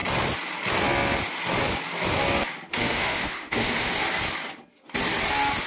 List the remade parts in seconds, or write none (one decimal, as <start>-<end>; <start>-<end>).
2.7-3.9